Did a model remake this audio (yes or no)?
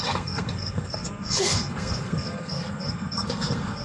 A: yes